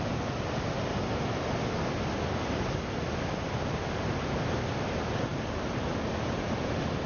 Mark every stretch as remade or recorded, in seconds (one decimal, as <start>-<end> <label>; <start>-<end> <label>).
0.0-7.1 recorded